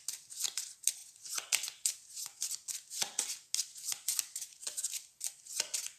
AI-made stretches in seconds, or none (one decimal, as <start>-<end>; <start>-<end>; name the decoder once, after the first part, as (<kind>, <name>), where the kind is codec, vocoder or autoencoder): none